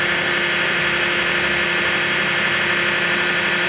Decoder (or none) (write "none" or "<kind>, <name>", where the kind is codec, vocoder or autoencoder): none